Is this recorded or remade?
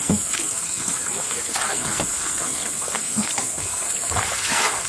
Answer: remade